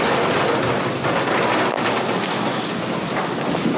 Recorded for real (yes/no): yes